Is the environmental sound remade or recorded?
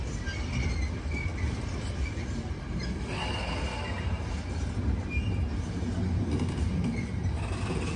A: recorded